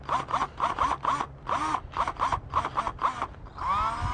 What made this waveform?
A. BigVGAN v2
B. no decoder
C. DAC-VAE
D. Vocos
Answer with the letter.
B